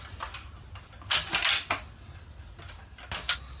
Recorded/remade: recorded